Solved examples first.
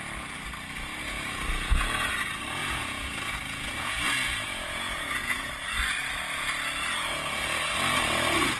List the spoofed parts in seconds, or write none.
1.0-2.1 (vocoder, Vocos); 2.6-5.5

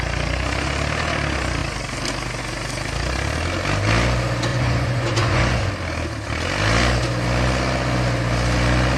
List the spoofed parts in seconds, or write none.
4.5-5.7 (vocoder, Vocos)

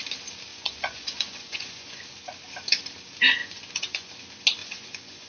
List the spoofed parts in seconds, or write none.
0.5-2.0 (vocoder, Vocos); 3.4-4.1; 4.6-5.3

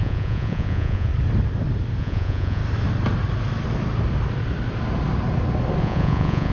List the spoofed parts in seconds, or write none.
0.0-1.1 (vocoder, Vocos); 2.0-2.6; 5.8-6.5

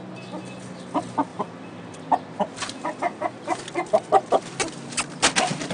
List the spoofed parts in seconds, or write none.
none

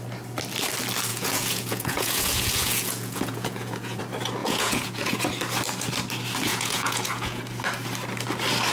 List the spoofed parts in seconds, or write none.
1.1-4.0 (vocoder, Vocos); 4.4-5.2; 6.5-7.4

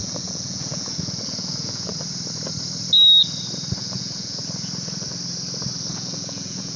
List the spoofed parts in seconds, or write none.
0.0-1.9 (vocoder, Vocos); 3.8-4.4; 5.9-6.8

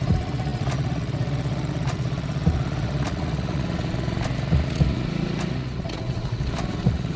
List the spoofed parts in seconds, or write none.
0.0-7.2 (vocoder, Vocos)